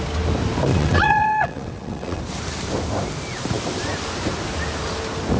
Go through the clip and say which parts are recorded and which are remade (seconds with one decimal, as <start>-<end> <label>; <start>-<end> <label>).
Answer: 0.0-0.7 recorded; 0.7-2.2 remade; 2.2-5.4 recorded